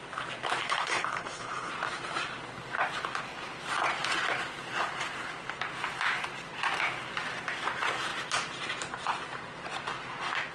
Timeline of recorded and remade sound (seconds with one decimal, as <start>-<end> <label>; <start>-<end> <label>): 0.0-0.6 recorded; 0.6-1.7 remade; 1.7-10.5 recorded